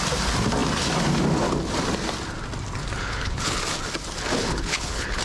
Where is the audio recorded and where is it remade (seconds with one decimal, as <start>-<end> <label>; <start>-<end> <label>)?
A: 0.0-3.0 recorded; 3.0-3.6 remade; 3.6-4.4 recorded; 4.4-5.2 remade